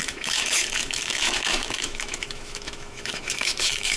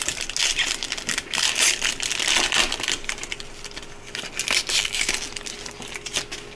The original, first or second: second